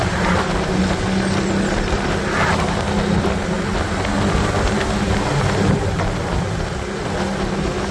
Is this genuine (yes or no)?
yes